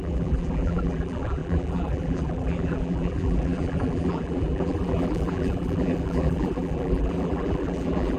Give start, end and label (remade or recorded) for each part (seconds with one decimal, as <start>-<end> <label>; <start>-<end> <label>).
0.0-8.2 remade